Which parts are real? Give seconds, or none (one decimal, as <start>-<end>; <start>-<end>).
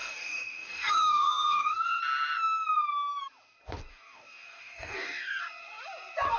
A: 2.0-3.9; 5.4-6.4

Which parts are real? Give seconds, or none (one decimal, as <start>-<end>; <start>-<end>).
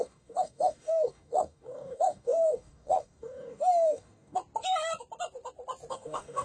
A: 4.4-5.9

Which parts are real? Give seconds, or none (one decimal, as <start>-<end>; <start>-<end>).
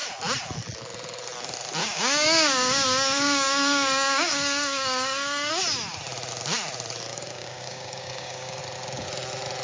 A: 0.0-1.8; 5.5-7.1; 8.6-9.6